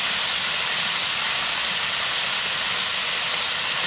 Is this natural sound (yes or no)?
yes